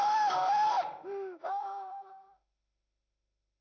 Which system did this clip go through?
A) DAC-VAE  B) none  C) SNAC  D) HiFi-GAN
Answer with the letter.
A